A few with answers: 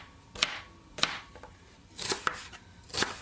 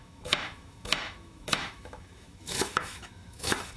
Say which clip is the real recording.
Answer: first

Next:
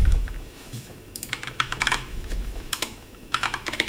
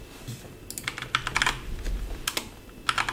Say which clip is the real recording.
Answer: second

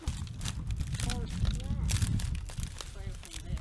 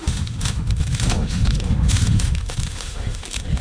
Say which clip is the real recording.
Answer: first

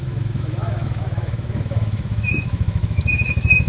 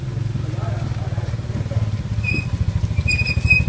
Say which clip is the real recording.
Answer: second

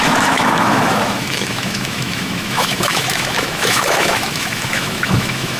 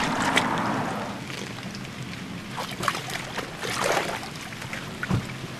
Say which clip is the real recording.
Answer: second